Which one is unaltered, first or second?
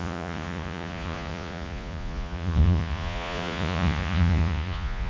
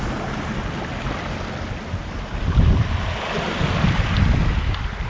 second